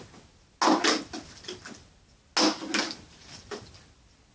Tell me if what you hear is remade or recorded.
recorded